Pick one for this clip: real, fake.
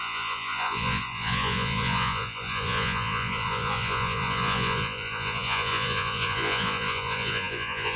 fake